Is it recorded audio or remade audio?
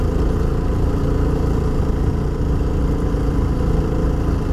recorded